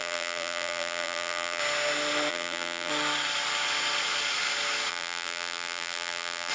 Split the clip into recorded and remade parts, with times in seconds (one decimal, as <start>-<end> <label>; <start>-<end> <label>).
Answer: 0.0-1.6 remade; 1.6-2.3 recorded; 2.3-2.9 remade; 2.9-4.9 recorded; 4.9-6.5 remade